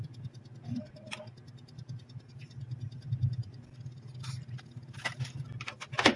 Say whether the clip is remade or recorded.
recorded